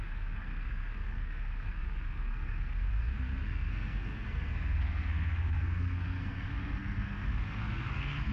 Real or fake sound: fake